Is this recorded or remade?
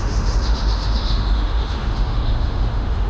remade